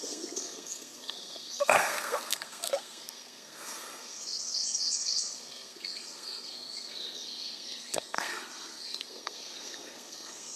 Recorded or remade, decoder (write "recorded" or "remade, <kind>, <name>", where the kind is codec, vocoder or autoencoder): remade, codec, SNAC